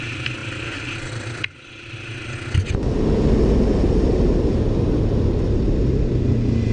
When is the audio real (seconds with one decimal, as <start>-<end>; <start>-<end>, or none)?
0.0-6.7